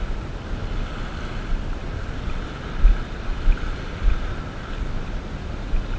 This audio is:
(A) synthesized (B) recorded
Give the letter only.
B